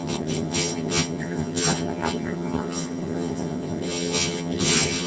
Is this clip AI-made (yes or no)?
yes